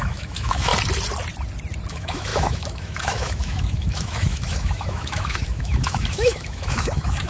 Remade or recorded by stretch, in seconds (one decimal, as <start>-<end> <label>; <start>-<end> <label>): 0.0-0.7 remade; 0.7-1.9 recorded; 1.9-7.3 remade

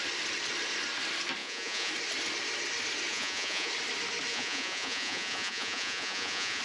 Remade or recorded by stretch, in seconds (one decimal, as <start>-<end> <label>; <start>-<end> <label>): 0.0-1.4 recorded; 1.4-1.9 remade; 1.9-3.1 recorded; 3.1-3.7 remade; 3.7-4.3 recorded; 4.3-6.6 remade

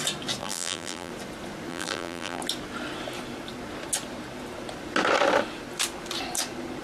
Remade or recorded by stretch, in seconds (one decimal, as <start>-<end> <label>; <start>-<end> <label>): 0.0-0.4 recorded; 0.4-1.1 remade; 1.1-1.7 recorded; 1.7-2.4 remade; 2.4-6.8 recorded

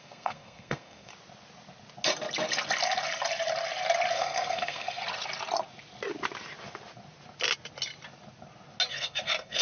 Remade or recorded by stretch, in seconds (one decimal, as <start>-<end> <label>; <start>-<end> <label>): 0.0-1.1 remade; 1.1-4.1 recorded; 4.1-5.0 remade; 5.0-8.9 recorded; 8.9-9.6 remade

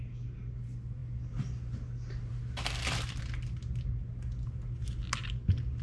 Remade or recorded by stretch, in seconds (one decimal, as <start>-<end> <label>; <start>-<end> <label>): 0.0-5.8 recorded

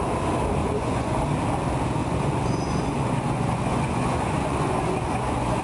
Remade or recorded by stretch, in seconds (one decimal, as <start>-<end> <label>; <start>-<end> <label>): 0.0-0.6 recorded; 0.6-1.2 remade; 1.2-2.0 recorded; 2.0-5.6 remade